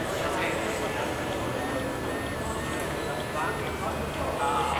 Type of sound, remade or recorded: recorded